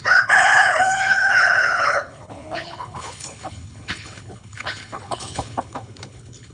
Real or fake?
fake